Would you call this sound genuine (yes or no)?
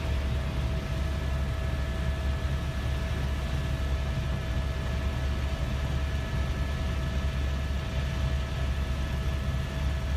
yes